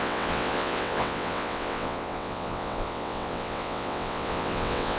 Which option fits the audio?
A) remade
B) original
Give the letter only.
A